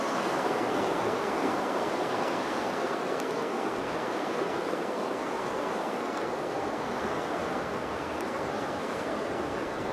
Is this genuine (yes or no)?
no